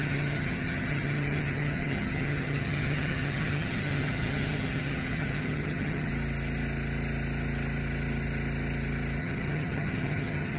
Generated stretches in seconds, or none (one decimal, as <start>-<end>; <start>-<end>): 0.0-6.1; 9.2-10.6